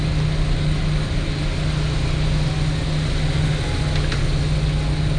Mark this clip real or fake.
real